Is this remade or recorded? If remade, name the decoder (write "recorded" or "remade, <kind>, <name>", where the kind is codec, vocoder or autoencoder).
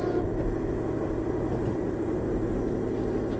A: recorded